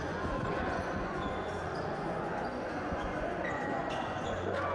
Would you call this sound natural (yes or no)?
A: no